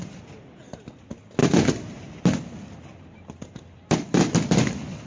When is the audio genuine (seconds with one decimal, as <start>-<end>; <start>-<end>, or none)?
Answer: 0.0-5.1